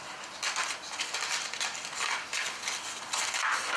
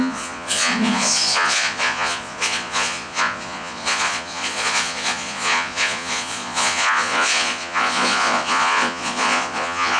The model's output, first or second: second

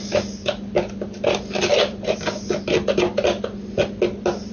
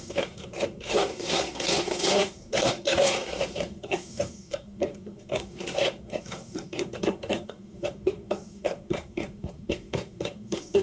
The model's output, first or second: second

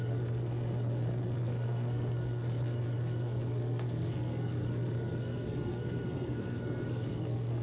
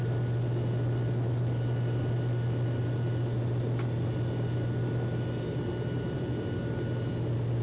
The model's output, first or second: first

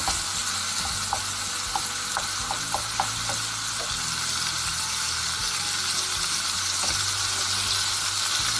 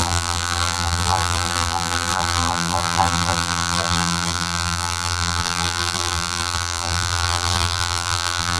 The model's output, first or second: second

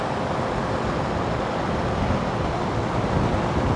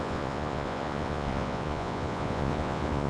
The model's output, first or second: second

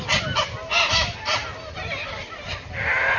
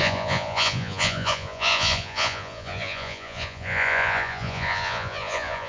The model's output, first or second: second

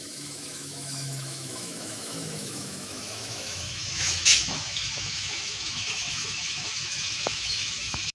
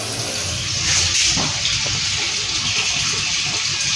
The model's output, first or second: first